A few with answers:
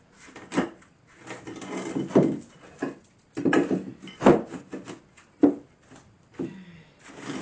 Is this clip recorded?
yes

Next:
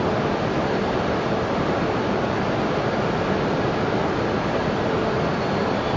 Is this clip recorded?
yes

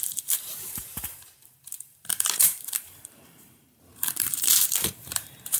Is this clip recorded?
no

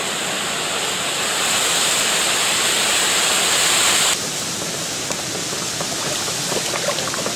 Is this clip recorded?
yes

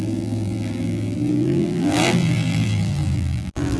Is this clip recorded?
no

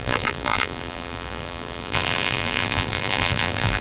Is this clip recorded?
no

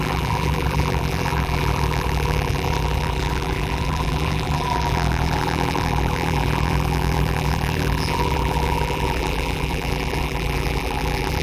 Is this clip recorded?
no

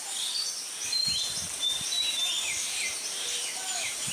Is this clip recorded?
no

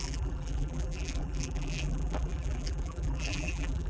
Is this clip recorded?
no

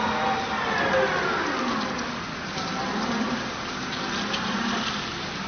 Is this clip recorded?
yes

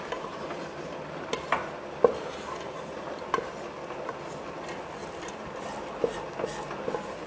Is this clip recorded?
yes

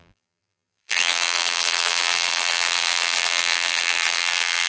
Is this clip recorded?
no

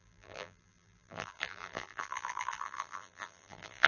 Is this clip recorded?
no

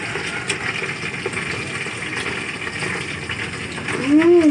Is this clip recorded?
yes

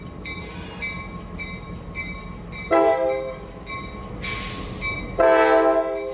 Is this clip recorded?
yes